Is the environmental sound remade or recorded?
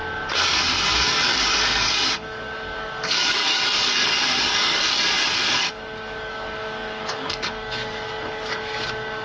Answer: remade